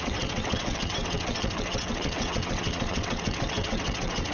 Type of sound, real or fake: fake